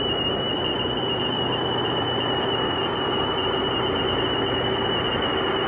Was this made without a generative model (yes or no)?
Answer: yes